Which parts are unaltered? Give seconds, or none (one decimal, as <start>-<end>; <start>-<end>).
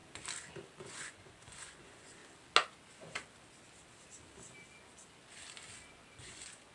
0.0-0.8; 2.2-6.2